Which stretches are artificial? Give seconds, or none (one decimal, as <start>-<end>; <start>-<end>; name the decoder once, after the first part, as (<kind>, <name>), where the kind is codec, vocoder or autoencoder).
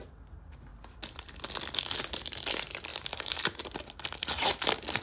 2.9-3.6 (vocoder, BigVGAN v2)